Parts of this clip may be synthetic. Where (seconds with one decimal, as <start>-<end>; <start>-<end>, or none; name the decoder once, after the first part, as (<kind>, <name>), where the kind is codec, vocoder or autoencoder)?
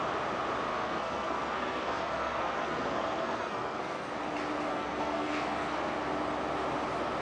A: 0.7-4.1 (codec, SNAC); 4.7-6.0